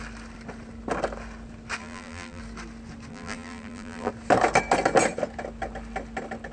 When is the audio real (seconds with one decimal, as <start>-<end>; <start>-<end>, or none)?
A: 0.0-1.8; 2.4-3.1; 4.1-6.5